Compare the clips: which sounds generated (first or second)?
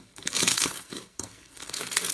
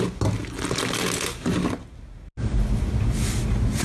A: first